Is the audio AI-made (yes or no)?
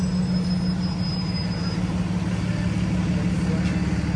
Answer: no